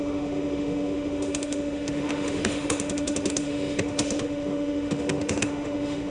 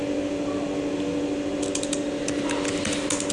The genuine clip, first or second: second